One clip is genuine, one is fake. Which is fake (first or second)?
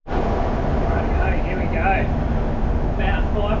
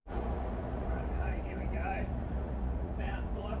second